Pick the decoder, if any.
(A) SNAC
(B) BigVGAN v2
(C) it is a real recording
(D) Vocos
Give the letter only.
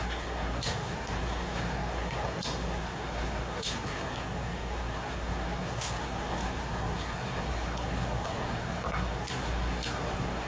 A